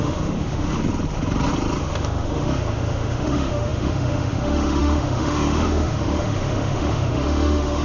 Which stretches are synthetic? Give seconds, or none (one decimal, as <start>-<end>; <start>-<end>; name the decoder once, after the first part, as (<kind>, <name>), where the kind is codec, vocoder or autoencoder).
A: 0.0-0.8 (autoencoder, DAC-VAE); 1.8-7.8